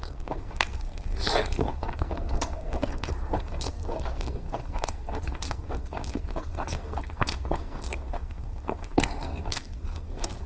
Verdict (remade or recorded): remade